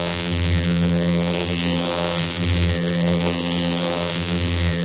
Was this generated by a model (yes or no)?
yes